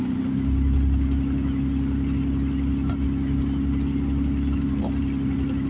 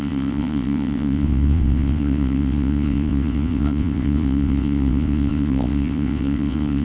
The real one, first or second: first